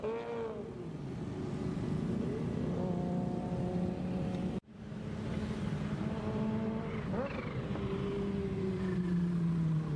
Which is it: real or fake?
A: real